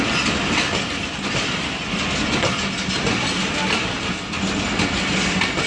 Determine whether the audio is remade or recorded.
recorded